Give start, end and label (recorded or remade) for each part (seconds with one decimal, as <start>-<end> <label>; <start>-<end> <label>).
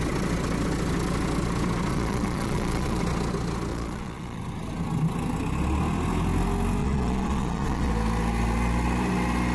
0.0-1.9 recorded; 1.9-3.0 remade; 3.0-3.7 recorded; 3.7-4.4 remade; 4.4-6.8 recorded; 6.8-7.9 remade; 7.9-9.5 recorded